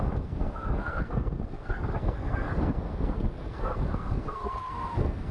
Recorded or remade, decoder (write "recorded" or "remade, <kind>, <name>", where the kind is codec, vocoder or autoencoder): remade, codec, SNAC